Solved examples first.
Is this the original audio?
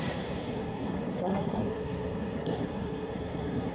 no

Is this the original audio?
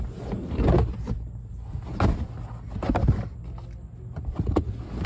yes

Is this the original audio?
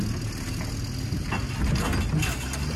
yes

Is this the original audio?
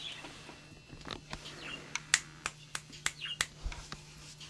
yes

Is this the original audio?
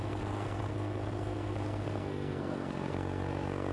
no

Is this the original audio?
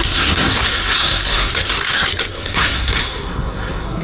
no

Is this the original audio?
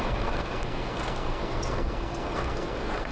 no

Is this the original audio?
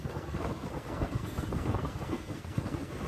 no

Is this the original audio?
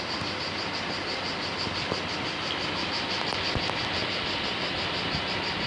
yes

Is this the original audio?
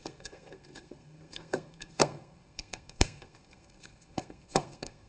no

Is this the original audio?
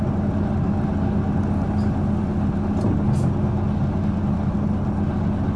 yes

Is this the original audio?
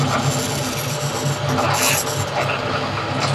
yes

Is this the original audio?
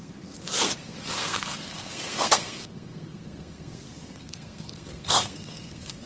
no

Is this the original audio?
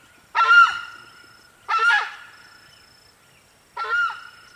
yes